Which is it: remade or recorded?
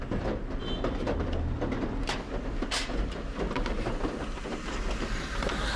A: recorded